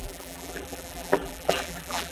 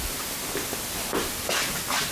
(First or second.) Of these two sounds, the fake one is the first